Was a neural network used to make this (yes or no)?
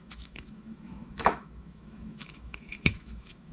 yes